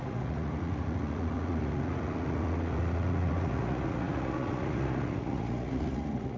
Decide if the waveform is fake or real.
fake